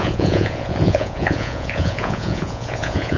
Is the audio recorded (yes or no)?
no